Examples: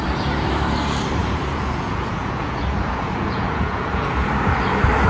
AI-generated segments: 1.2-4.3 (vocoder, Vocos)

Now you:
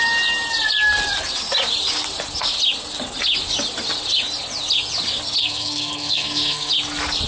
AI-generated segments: 5.4-6.7 (codec, SNAC)

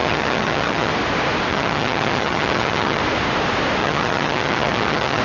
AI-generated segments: 0.0-0.9 (vocoder, HiFi-GAN); 1.5-3.0; 3.8-5.2

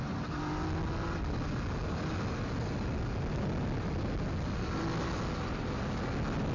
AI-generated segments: none

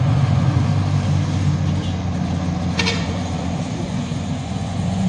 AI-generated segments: 0.0-0.7 (vocoder, Vocos); 2.8-5.1

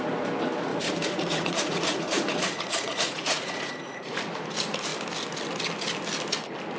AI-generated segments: 0.7-4.2 (vocoder, Vocos)

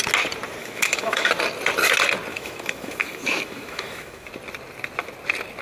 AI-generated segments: 0.6-1.3 (autoencoder, DAC-VAE); 2.3-4.3

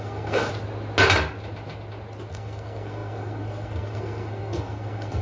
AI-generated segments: 0.0-0.5 (codec, SNAC); 2.3-5.2